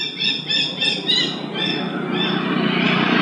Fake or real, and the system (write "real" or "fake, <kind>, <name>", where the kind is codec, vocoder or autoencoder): real